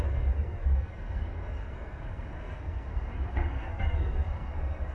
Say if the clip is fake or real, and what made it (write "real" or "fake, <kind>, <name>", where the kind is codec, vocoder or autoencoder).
fake, codec, SNAC